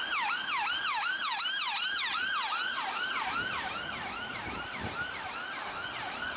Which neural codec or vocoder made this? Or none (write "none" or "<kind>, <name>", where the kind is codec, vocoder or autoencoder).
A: none